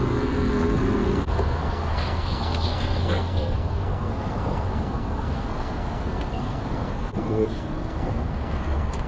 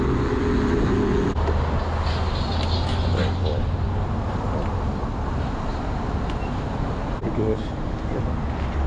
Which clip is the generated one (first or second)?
first